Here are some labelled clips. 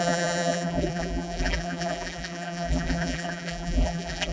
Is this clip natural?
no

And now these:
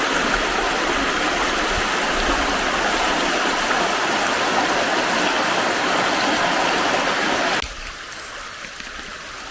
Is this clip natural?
yes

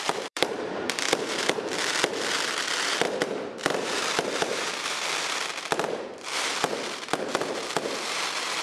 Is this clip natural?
no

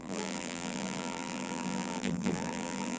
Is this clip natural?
no